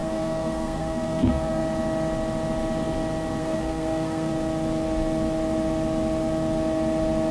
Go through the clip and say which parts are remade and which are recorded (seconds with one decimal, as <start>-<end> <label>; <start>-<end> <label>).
0.0-1.6 remade; 1.6-3.4 recorded; 3.4-4.3 remade; 4.3-7.3 recorded